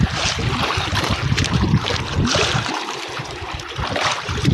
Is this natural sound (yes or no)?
no